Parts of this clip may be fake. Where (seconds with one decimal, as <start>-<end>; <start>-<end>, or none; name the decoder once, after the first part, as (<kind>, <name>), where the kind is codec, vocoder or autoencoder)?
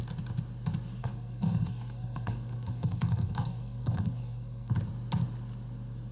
1.0-4.7 (codec, SNAC)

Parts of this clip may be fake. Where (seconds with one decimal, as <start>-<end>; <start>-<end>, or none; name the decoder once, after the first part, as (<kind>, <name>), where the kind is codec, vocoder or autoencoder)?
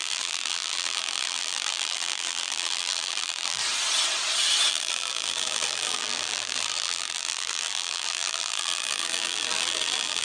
0.0-3.6 (vocoder, BigVGAN v2); 4.7-10.2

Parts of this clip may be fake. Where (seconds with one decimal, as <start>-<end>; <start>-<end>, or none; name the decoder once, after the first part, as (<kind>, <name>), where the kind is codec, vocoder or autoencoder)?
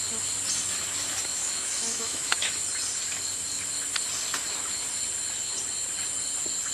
1.3-2.6 (autoencoder, DAC-VAE)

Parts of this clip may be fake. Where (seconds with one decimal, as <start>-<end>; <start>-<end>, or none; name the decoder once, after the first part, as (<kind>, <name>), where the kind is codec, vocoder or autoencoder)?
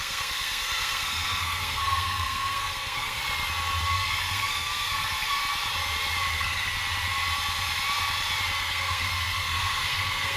0.0-3.2 (codec, SNAC); 3.9-5.4; 6.3-6.7; 8.6-10.4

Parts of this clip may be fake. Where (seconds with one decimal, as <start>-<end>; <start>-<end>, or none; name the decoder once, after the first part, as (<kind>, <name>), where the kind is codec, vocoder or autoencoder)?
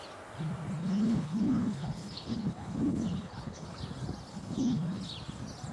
0.8-3.8 (codec, HILCodec); 4.3-5.0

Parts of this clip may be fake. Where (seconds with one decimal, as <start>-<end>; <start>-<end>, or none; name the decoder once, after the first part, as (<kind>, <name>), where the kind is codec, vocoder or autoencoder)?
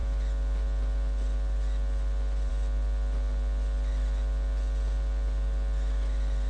0.0-2.5 (vocoder, BigVGAN v2)